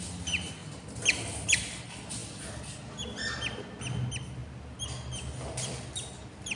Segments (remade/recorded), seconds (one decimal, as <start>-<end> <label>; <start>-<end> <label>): 0.0-6.6 recorded